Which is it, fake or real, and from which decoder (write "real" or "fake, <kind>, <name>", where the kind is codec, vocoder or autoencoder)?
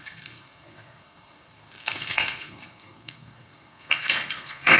fake, codec, SNAC